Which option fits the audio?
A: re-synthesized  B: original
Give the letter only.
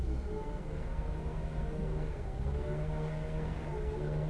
A